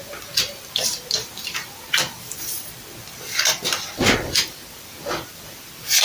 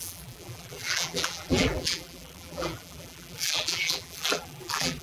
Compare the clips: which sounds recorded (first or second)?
first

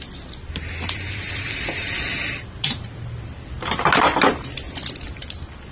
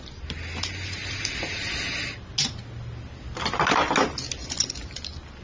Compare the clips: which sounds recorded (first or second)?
second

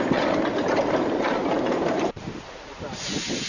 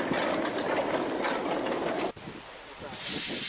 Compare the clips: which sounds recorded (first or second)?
second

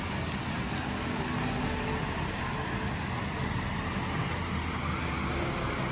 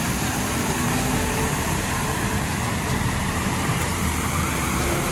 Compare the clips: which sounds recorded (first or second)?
first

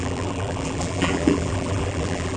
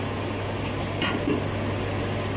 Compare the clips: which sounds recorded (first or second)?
second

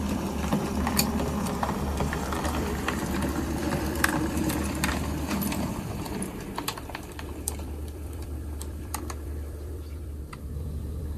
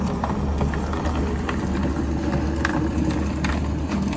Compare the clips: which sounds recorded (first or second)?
second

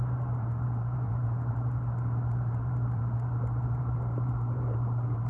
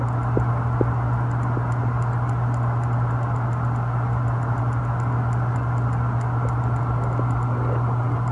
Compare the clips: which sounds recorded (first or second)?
second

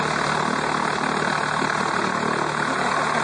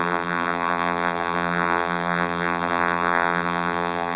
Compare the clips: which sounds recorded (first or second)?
first